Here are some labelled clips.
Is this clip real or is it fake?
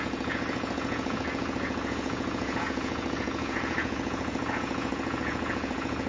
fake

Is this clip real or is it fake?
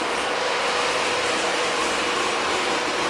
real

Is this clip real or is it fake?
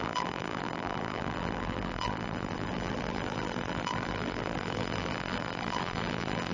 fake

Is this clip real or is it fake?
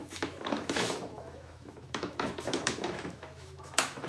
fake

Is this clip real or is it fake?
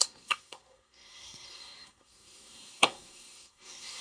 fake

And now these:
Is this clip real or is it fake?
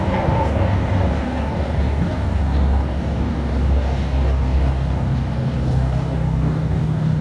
fake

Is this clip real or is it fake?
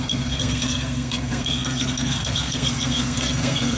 fake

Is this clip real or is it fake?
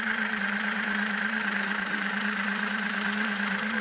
fake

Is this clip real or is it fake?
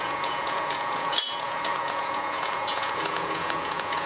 fake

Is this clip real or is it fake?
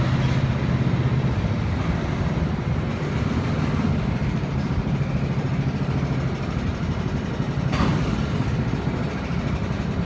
real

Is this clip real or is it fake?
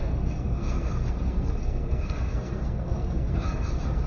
fake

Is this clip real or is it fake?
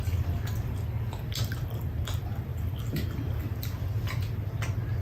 real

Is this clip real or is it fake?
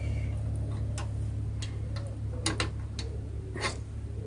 real